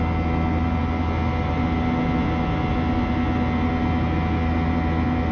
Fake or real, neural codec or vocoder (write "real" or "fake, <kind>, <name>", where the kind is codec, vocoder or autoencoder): real